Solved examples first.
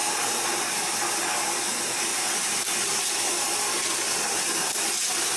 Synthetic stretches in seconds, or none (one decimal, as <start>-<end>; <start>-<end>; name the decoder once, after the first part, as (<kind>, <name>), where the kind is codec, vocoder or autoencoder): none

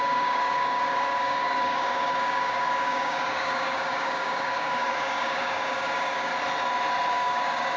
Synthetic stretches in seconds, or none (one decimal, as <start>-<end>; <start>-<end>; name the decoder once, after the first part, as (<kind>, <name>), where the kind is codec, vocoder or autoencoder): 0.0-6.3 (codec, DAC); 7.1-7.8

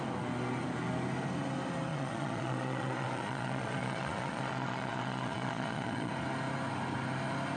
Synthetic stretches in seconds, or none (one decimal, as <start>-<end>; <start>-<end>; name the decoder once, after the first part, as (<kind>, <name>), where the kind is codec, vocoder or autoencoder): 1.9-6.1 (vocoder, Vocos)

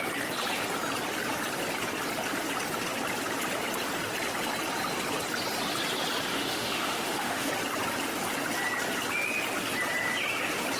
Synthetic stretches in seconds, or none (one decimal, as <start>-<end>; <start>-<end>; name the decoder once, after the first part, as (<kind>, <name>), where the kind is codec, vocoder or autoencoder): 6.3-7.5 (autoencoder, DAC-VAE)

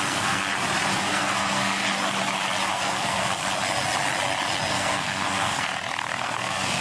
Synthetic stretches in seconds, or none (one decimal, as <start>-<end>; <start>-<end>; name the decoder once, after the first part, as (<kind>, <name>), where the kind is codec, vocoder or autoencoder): 0.0-0.5 (codec, SNAC); 1.0-1.8; 2.7-3.4; 4.7-5.7; 6.2-6.8

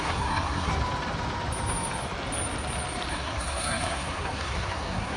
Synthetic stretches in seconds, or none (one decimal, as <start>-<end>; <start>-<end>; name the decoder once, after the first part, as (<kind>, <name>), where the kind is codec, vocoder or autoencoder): 0.0-0.7 (codec, SNAC); 3.1-5.2

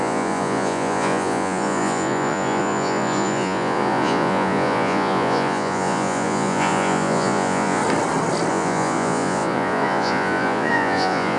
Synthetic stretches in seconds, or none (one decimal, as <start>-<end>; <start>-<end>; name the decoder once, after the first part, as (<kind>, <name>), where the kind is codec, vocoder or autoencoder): 0.0-7.8 (vocoder, Vocos); 8.5-11.4